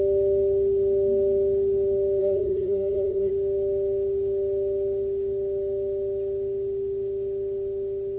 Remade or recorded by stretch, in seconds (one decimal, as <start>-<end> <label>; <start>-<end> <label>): 0.0-2.2 recorded; 2.2-3.3 remade; 3.3-8.2 recorded